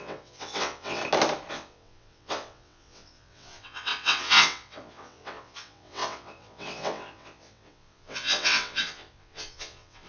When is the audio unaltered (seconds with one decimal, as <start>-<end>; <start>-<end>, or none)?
1.0-1.5

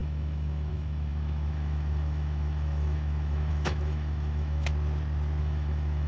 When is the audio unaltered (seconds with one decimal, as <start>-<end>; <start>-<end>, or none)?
4.7-5.4

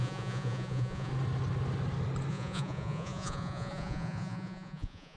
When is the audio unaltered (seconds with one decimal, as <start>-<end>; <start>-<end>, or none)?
1.1-2.3

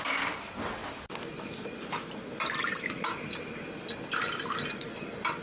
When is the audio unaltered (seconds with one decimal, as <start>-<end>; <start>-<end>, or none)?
0.0-5.4

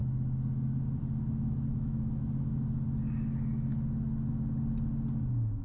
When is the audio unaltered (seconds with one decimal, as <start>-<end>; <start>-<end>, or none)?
0.0-1.7; 2.2-5.6

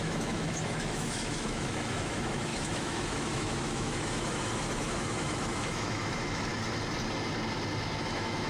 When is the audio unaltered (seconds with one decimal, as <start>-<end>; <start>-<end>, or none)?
6.5-8.0

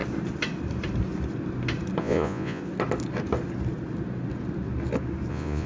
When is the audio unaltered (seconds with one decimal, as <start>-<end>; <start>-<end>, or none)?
0.0-2.0; 2.6-5.3

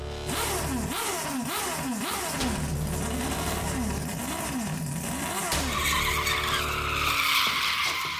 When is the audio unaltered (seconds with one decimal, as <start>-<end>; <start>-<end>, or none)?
0.0-8.2